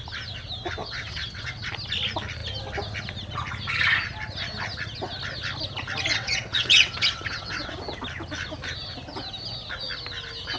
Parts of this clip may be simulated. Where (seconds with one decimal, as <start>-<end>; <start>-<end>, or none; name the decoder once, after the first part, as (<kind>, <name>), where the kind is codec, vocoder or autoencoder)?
0.8-1.7 (vocoder, WaveNeXt); 6.1-7.7